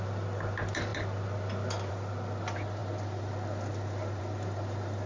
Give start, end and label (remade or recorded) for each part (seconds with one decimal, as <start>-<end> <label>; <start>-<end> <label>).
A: 0.0-5.1 recorded